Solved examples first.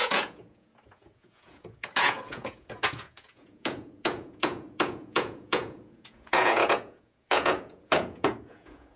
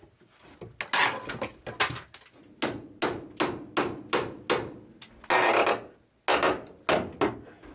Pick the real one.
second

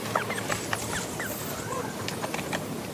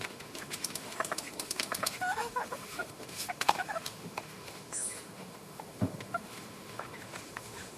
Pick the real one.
first